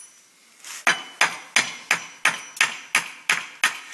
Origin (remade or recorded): recorded